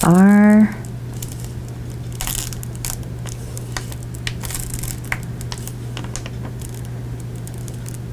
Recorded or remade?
recorded